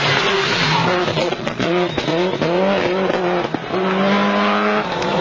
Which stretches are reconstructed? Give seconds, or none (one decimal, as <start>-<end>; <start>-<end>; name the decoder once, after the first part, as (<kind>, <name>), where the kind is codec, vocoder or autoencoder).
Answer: 1.1-1.9 (vocoder, Vocos)